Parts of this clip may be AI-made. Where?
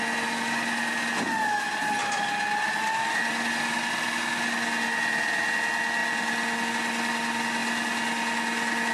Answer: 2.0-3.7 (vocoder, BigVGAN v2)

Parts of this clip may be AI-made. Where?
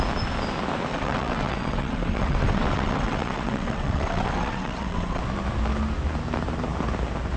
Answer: 0.9-5.2 (vocoder, WaveNeXt)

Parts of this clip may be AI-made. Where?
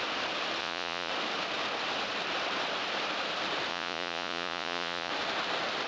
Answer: 0.6-1.1 (vocoder, Vocos); 3.7-5.1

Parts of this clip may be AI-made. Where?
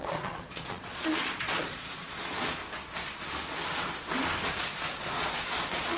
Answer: 0.0-2.6 (vocoder, Vocos); 4.6-6.0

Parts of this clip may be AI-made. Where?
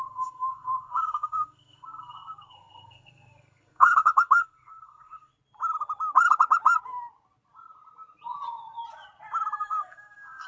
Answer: 0.0-5.3 (codec, SNAC); 9.6-10.5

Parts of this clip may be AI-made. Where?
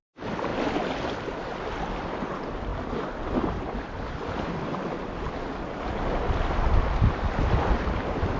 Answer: none